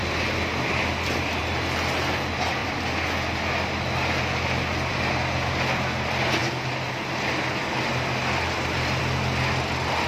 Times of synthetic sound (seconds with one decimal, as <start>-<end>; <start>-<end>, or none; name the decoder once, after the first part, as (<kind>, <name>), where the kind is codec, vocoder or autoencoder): none

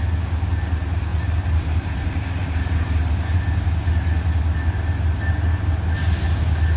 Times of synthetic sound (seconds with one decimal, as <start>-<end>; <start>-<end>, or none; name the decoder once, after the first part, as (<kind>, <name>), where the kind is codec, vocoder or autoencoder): 1.1-3.4 (vocoder, BigVGAN v2)

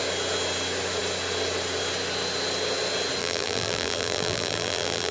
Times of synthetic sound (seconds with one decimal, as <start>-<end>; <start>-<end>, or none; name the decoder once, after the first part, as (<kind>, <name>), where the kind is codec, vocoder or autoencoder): 3.2-5.1 (vocoder, BigVGAN v2)

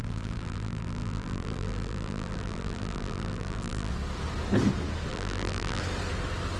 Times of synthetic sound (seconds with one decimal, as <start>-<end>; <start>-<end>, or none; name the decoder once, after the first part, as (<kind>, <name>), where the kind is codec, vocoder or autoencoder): 0.0-3.9 (vocoder, BigVGAN v2); 5.1-5.8

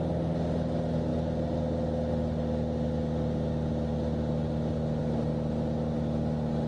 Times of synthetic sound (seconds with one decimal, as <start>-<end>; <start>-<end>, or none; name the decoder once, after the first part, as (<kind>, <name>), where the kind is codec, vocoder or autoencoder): none